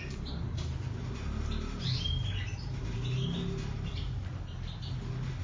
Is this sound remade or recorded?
recorded